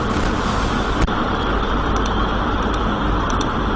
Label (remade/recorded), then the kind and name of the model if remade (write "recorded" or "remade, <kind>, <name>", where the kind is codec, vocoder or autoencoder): remade, vocoder, BigVGAN v2